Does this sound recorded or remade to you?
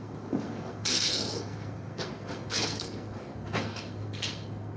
remade